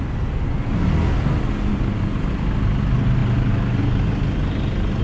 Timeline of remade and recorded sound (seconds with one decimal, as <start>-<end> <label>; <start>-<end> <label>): 0.0-5.0 recorded

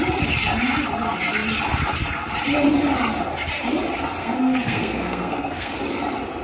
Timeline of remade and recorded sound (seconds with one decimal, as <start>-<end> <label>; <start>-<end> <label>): 0.0-4.2 recorded; 4.2-5.7 remade; 5.7-6.4 recorded

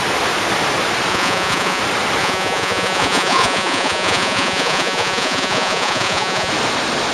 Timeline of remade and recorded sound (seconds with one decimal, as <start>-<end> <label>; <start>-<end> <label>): 0.0-1.1 recorded; 1.1-1.8 remade; 1.8-2.2 recorded; 2.2-6.5 remade; 6.5-7.1 recorded

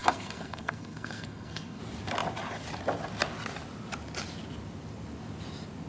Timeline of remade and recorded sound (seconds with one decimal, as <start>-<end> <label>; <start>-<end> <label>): 0.0-1.8 remade; 1.8-5.9 recorded

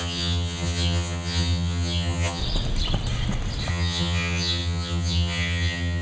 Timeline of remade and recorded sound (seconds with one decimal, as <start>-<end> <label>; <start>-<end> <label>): 0.0-2.4 remade; 2.4-3.7 recorded; 3.7-6.0 remade

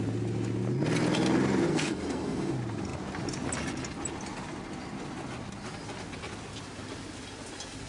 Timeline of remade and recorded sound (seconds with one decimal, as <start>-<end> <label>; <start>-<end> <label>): 0.0-1.7 recorded; 1.7-2.5 remade; 2.5-7.9 recorded

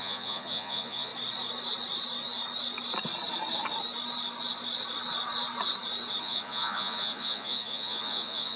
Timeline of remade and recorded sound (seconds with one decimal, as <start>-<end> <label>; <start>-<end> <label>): 0.0-1.1 remade; 1.1-6.2 recorded; 6.2-8.6 remade